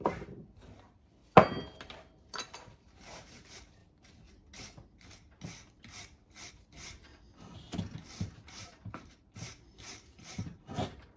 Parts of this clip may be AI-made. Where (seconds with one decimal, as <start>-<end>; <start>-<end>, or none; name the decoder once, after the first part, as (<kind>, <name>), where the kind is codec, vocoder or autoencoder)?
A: 0.0-1.2 (vocoder, BigVGAN v2); 1.8-3.8; 6.5-7.1; 8.3-11.2